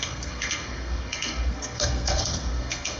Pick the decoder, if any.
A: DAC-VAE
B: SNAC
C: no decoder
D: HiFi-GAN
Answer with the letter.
B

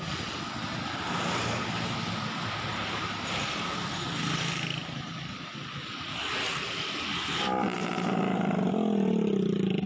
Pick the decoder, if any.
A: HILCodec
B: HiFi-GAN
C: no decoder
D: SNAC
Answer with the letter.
C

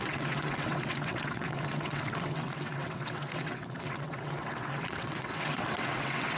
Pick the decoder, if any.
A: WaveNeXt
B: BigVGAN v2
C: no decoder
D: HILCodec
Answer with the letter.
A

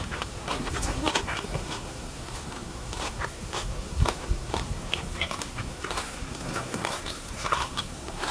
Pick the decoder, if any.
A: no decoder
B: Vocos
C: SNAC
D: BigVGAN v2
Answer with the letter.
C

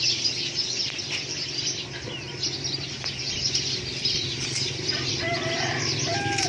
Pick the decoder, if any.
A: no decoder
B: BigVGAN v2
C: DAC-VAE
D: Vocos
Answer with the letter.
A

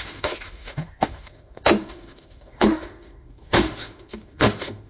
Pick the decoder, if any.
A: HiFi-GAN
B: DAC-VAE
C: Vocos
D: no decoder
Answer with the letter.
B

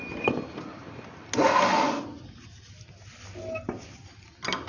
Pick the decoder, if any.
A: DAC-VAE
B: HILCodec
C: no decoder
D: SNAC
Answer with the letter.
C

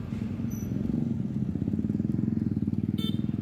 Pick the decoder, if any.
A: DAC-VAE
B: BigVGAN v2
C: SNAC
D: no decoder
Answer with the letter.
D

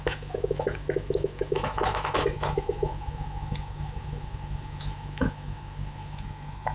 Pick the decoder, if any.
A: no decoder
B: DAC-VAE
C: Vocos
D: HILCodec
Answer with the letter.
B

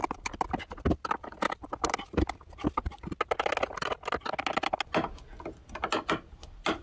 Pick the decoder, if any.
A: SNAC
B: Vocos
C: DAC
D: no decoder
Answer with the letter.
D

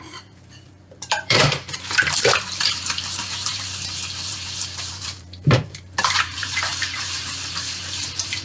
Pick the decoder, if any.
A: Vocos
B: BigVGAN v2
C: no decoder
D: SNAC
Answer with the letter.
B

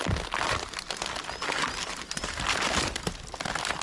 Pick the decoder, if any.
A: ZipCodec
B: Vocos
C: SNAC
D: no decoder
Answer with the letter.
D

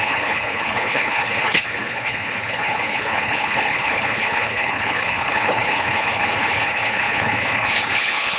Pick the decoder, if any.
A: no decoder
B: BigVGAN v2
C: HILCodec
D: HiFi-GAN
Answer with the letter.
C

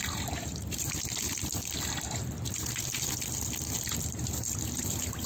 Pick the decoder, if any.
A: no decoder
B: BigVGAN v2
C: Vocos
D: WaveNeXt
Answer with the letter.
B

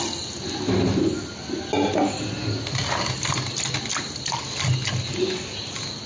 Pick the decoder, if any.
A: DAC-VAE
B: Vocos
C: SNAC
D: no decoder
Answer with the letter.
D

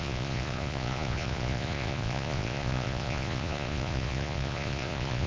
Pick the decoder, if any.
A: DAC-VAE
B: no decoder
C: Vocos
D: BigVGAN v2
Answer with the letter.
C